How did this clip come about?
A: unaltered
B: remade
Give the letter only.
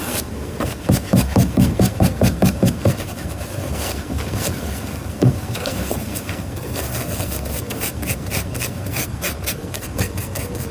B